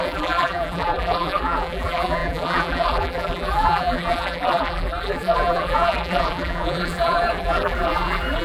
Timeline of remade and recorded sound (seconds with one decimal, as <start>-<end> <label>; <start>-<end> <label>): 0.0-8.4 remade